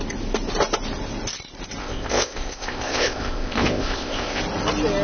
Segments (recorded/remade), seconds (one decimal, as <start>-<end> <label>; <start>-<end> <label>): 0.0-1.8 recorded; 1.8-4.4 remade; 4.4-5.0 recorded